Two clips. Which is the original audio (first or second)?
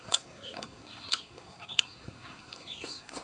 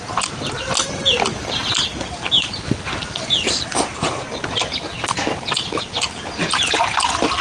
second